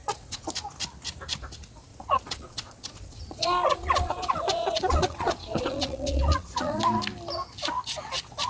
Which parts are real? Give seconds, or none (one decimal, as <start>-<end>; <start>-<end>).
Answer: 0.5-1.9; 6.8-8.5